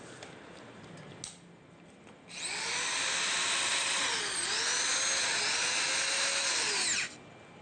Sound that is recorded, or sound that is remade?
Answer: recorded